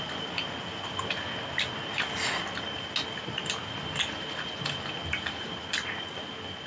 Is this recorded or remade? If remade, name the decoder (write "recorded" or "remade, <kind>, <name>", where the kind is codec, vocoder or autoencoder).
recorded